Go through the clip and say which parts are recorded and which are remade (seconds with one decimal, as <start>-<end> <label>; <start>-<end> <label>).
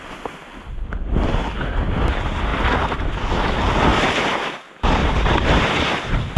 0.0-3.9 recorded; 3.9-4.6 remade; 4.6-5.0 recorded; 5.0-6.4 remade